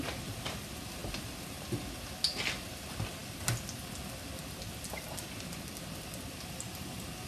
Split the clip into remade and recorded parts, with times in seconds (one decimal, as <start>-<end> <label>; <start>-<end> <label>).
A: 0.0-7.3 recorded